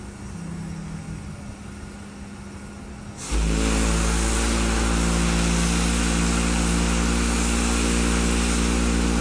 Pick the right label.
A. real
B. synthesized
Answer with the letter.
A